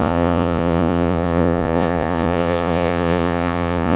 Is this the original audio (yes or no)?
no